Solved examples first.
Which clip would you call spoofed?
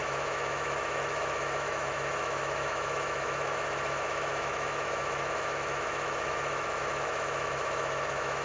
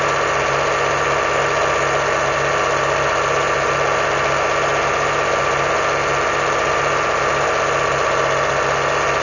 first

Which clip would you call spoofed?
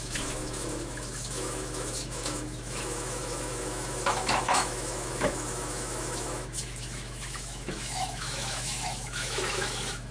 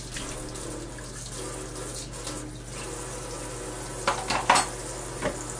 first